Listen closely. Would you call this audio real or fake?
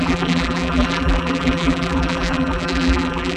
fake